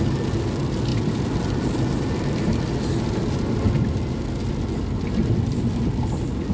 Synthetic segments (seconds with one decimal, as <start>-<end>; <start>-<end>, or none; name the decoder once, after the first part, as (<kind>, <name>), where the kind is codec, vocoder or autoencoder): 0.9-2.6 (vocoder, BigVGAN v2); 5.2-6.5

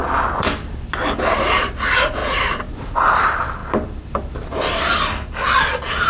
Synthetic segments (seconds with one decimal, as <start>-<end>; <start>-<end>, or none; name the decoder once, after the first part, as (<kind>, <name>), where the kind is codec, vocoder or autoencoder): 0.0-0.7 (vocoder, BigVGAN v2); 2.2-2.7

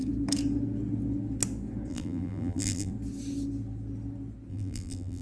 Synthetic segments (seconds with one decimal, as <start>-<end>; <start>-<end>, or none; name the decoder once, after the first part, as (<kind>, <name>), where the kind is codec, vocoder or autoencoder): 1.9-2.9 (vocoder, BigVGAN v2); 4.5-5.2

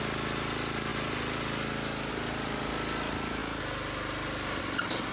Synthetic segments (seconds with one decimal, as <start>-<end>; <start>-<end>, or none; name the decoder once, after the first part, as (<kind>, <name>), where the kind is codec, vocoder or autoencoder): none

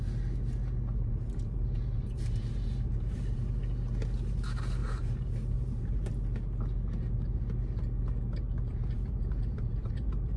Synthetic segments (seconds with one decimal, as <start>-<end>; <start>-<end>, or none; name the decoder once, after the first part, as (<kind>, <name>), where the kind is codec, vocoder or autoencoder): 0.9-3.6 (vocoder, BigVGAN v2); 4.8-6.1; 8.7-10.4

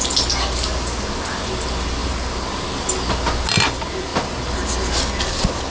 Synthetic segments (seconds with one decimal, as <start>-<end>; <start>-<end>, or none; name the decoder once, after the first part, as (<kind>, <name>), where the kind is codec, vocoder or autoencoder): 2.0-2.6 (vocoder, BigVGAN v2)

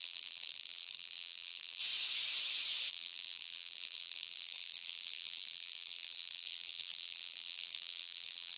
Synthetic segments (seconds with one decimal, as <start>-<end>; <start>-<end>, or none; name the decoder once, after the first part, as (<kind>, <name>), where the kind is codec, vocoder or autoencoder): 0.0-1.8 (vocoder, BigVGAN v2); 2.9-8.6

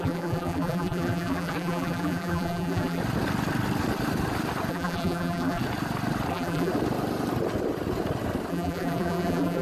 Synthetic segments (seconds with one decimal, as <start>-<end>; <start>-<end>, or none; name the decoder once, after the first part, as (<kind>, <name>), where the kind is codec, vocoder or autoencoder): 0.0-3.0 (vocoder, BigVGAN v2); 4.7-5.6; 6.3-6.7; 8.5-9.6